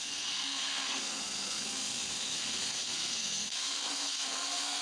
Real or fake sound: fake